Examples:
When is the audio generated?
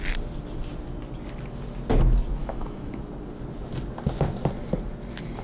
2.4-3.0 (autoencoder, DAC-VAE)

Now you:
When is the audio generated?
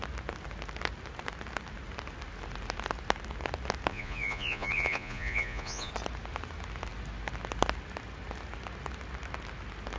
3.9-5.9 (vocoder, Vocos)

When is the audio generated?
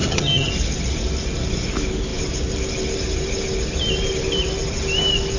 0.0-0.5 (vocoder, HiFi-GAN)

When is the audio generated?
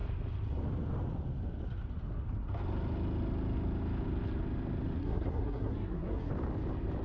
5.0-6.3 (codec, SNAC)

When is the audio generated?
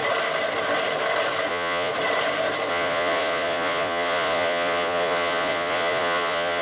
1.5-1.9 (vocoder, Vocos); 2.7-6.6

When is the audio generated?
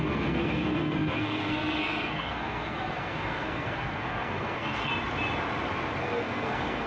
0.0-4.9 (codec, SNAC); 6.0-6.9